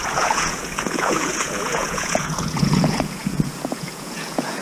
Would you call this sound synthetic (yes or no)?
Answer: yes